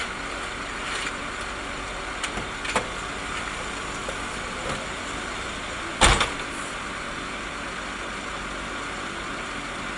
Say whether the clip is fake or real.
real